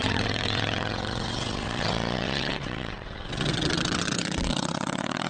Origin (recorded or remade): remade